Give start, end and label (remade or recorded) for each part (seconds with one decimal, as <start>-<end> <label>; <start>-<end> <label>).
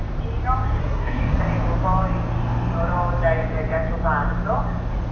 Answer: 0.0-0.8 recorded; 0.8-1.4 remade; 1.4-5.1 recorded